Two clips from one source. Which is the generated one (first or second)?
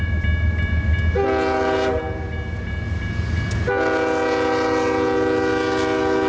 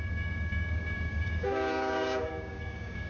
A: second